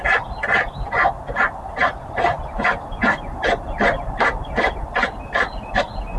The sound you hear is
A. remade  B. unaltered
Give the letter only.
B